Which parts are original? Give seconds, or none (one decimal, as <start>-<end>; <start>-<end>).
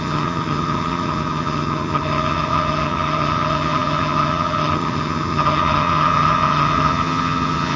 none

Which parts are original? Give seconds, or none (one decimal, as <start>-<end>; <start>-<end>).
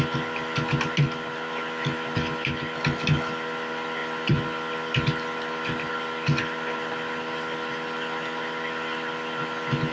0.0-9.9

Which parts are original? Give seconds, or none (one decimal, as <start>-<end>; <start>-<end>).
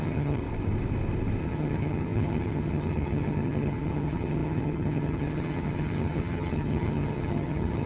0.4-1.4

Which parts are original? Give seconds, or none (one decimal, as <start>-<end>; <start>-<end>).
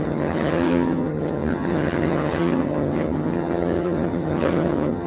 none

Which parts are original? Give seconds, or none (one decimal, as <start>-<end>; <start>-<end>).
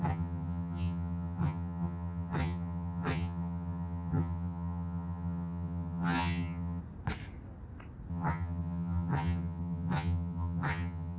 6.8-8.1